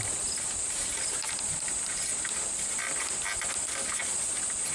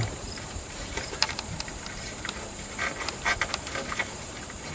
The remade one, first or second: second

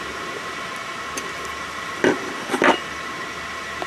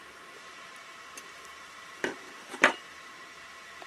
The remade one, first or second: second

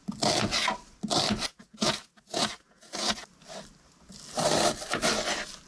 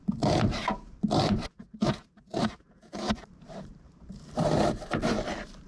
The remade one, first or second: second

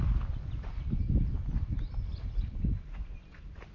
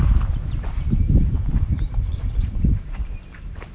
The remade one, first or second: second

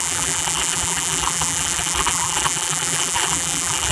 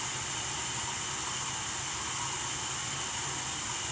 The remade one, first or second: first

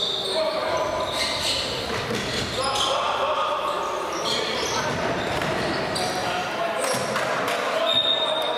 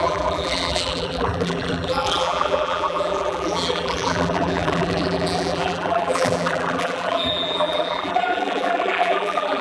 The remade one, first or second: second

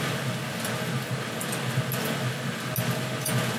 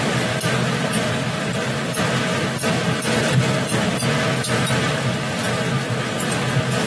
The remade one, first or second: second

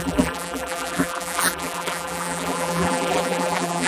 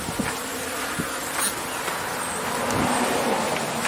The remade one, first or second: first